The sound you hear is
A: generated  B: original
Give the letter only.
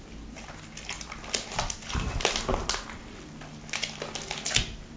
B